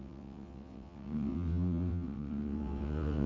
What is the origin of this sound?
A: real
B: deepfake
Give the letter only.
B